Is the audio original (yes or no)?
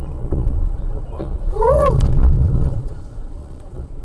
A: no